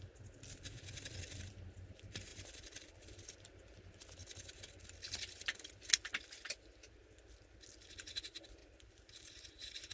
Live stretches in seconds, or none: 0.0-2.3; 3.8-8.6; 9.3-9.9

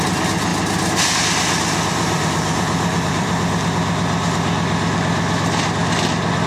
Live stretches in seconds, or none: 0.0-1.9; 3.5-6.5

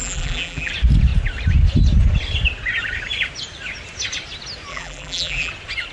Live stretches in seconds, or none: 0.7-4.7; 5.5-5.9

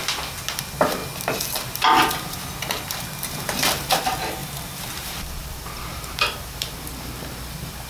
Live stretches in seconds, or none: 0.0-4.4; 6.8-7.9